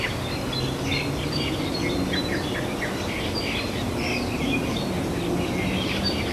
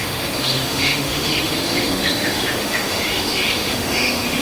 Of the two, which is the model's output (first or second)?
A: second